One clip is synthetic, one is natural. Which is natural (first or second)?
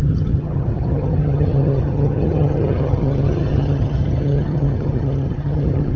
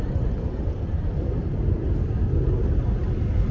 second